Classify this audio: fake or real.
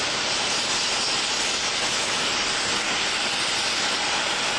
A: real